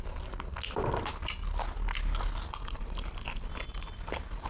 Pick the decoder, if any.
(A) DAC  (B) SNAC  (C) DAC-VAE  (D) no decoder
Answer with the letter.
D